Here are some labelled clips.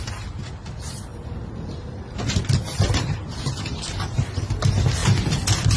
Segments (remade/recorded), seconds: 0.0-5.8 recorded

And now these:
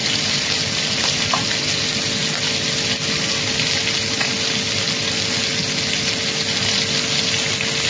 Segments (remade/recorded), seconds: 0.0-7.9 recorded

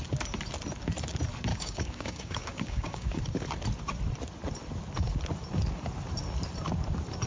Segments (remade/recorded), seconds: 0.0-1.5 recorded; 1.5-3.2 remade; 3.2-7.3 recorded

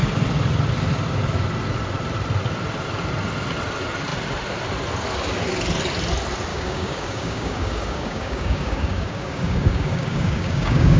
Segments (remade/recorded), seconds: 0.0-6.5 recorded; 6.5-11.0 remade

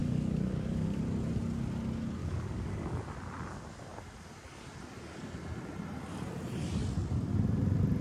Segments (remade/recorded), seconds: 0.0-1.0 remade; 1.0-2.2 recorded; 2.2-3.0 remade; 3.0-8.0 recorded